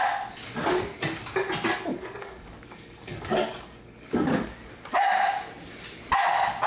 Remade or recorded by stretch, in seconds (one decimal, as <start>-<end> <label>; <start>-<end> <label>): 0.0-1.9 recorded; 1.9-4.7 remade; 4.7-6.7 recorded